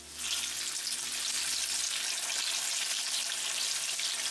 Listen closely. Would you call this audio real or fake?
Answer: real